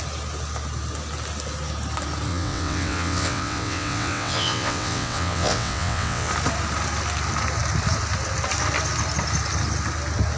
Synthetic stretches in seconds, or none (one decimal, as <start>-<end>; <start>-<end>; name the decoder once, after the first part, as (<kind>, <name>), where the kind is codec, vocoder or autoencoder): 2.3-6.3 (vocoder, WaveNeXt)